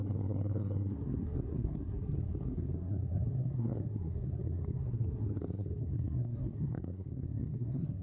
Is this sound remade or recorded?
remade